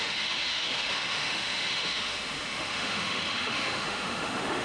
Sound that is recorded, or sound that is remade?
remade